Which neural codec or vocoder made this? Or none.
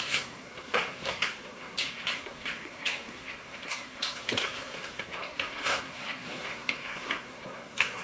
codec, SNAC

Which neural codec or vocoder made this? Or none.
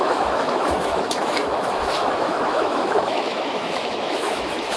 autoencoder, DAC-VAE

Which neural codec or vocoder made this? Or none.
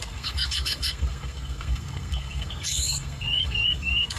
codec, SNAC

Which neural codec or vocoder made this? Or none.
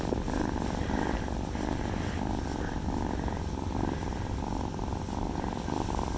none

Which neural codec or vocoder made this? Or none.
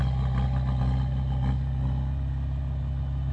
none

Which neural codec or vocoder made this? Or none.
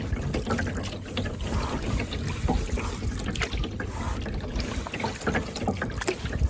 none